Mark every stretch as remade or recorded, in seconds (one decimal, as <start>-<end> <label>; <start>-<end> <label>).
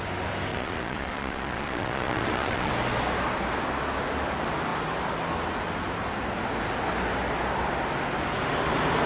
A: 0.0-0.5 recorded; 0.5-2.7 remade; 2.7-9.1 recorded